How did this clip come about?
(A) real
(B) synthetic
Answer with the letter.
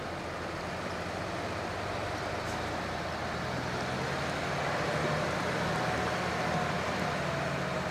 A